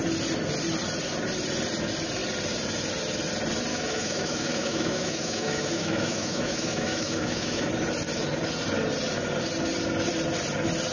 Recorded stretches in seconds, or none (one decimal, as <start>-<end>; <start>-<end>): 0.0-3.7; 7.7-10.9